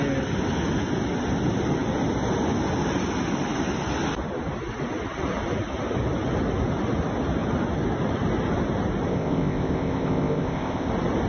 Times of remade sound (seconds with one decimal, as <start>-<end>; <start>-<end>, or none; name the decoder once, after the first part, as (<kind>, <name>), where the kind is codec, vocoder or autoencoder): 9.1-10.9 (codec, ZipCodec)